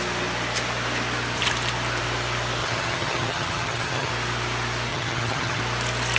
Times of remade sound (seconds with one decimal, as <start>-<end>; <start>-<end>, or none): 2.6-4.1; 4.9-5.6